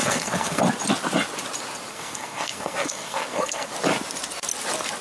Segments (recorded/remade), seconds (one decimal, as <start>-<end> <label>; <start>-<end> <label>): 0.0-0.6 remade; 0.6-1.9 recorded; 1.9-3.7 remade; 3.7-5.0 recorded